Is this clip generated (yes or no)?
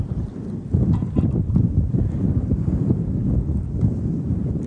no